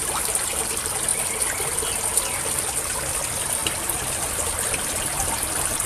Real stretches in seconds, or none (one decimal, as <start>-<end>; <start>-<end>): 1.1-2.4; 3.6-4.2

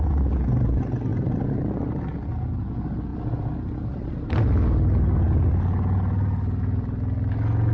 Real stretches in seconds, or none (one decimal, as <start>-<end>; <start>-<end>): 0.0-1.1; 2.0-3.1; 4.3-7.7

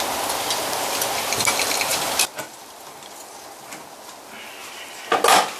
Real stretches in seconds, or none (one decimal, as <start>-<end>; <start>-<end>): 0.0-1.9; 3.2-4.6

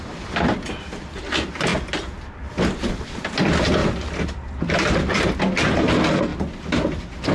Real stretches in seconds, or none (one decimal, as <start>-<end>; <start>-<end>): 0.0-6.3

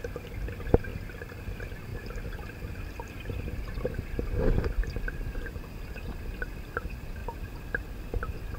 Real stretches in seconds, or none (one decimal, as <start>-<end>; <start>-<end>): 0.0-0.9; 1.4-1.9; 6.3-8.6

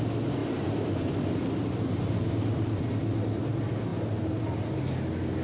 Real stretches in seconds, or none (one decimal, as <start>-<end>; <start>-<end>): 0.0-0.4; 3.4-5.4